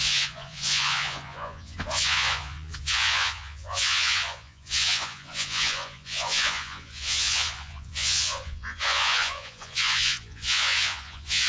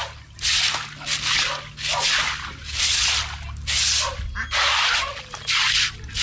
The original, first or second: second